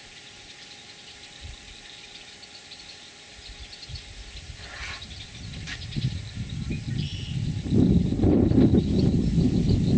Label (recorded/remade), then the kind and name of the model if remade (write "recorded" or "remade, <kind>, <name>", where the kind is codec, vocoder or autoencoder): recorded